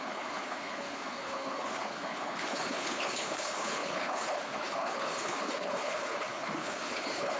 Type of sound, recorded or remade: remade